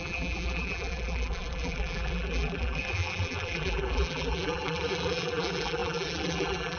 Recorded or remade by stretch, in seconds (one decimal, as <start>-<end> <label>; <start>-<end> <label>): 0.0-6.8 remade